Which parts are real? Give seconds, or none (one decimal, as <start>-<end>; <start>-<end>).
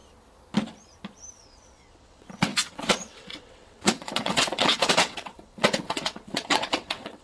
0.0-1.3